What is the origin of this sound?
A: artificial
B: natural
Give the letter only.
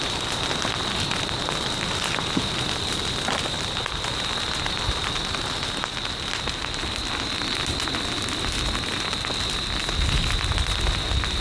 B